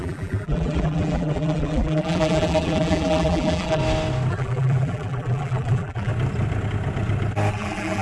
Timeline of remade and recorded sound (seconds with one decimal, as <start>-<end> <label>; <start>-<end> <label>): 0.0-3.8 remade; 3.8-4.3 recorded; 4.3-6.1 remade; 6.1-7.5 recorded; 7.5-8.0 remade